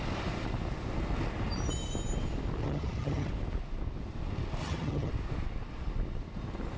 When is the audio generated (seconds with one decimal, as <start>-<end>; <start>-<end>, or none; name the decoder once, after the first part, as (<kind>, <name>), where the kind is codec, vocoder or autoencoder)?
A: 2.6-3.3 (vocoder, HiFi-GAN); 4.6-5.1